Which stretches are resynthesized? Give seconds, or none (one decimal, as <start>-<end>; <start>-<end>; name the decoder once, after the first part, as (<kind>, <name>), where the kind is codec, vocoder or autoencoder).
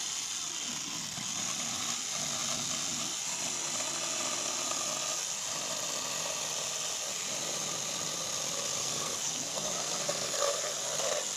8.8-10.7 (codec, SNAC)